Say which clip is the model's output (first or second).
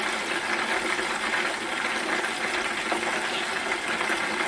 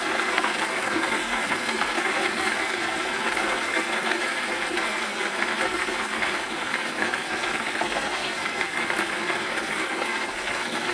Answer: second